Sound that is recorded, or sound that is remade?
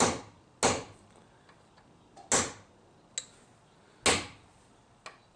recorded